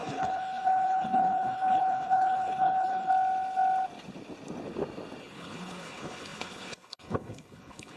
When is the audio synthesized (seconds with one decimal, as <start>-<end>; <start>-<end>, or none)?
0.0-3.1; 5.2-8.0